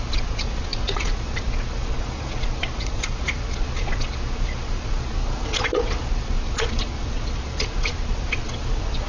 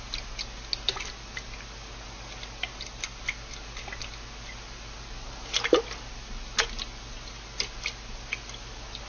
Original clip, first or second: second